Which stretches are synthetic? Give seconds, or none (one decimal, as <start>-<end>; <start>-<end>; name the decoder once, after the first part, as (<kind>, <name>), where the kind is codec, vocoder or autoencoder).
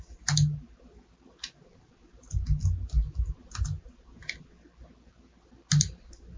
none